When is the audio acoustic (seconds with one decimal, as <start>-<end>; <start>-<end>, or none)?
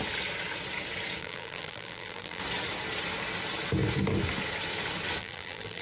0.0-1.2; 2.4-5.2